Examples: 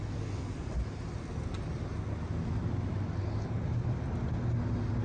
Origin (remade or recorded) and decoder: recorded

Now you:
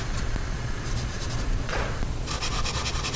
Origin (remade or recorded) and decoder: remade, vocoder, Vocos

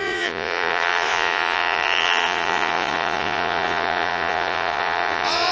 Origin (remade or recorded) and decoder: remade, vocoder, Vocos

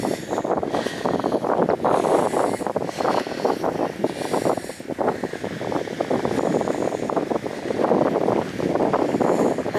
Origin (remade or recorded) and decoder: recorded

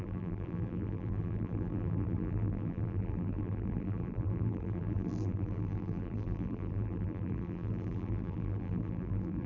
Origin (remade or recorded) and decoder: remade, vocoder, BigVGAN v2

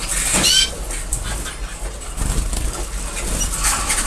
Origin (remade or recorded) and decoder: recorded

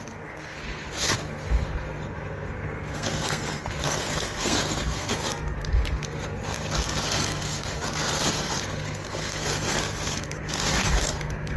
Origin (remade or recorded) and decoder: remade, codec, SNAC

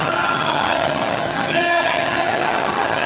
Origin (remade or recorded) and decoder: remade, vocoder, HiFi-GAN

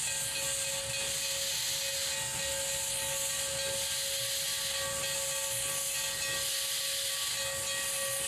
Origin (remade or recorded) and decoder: recorded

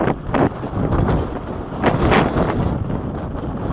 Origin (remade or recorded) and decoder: recorded